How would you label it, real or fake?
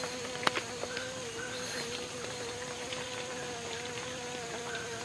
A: real